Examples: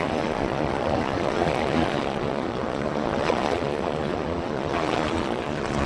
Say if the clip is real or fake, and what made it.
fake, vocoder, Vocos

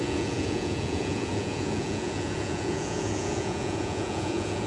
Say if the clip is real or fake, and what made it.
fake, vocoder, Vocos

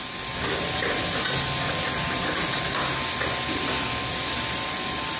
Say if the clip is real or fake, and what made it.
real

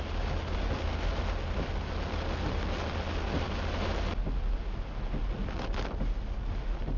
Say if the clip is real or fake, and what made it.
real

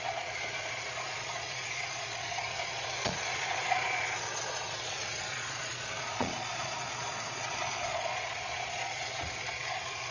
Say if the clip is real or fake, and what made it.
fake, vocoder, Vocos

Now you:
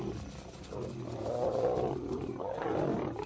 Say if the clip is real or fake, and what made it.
real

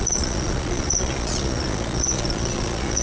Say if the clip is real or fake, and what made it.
fake, vocoder, Vocos